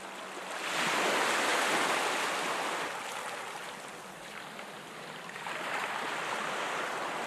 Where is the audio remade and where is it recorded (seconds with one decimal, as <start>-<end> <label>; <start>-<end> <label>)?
0.0-7.3 recorded